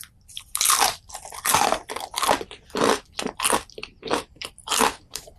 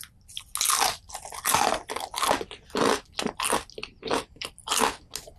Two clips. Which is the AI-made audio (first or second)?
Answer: first